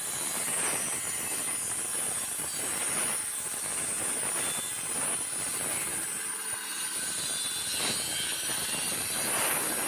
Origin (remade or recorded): recorded